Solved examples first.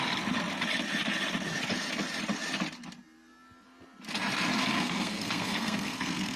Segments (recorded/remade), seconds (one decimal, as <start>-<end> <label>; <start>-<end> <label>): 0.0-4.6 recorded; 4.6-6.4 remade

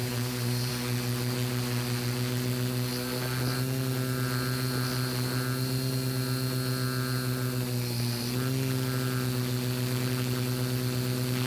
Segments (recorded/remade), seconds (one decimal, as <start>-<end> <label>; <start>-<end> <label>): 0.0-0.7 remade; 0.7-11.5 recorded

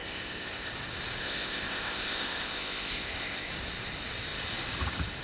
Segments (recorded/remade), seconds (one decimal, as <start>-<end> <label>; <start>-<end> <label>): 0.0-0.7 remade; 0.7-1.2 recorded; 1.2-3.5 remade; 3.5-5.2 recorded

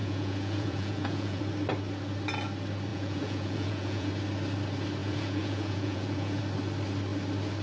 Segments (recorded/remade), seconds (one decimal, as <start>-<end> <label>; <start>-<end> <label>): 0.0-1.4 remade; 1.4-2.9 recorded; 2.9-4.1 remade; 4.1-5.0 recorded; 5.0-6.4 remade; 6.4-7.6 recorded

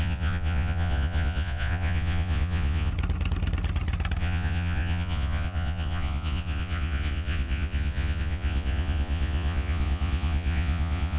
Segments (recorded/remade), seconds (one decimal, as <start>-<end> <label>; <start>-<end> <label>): 0.0-2.9 remade; 2.9-4.2 recorded; 4.2-11.2 remade

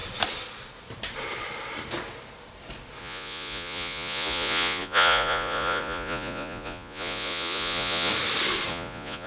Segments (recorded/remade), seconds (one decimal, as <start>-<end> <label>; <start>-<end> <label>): 0.0-3.0 recorded; 3.0-8.1 remade; 8.1-8.7 recorded; 8.7-9.3 remade

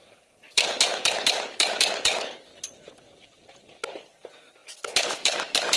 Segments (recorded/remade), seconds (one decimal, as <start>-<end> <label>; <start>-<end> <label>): 0.0-2.5 remade; 2.5-4.0 recorded; 4.0-5.8 remade

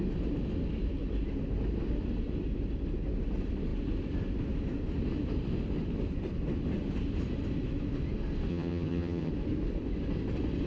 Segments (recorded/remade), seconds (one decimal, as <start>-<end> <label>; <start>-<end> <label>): 0.0-8.5 recorded; 8.5-9.3 remade; 9.3-10.7 recorded